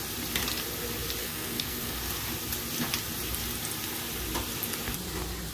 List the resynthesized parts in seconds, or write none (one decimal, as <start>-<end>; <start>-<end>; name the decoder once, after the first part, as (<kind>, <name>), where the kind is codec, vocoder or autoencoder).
1.2-2.0 (codec, SNAC)